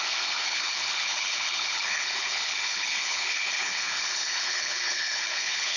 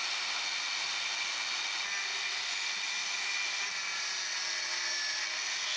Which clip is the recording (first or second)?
second